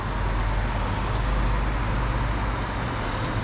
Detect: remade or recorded recorded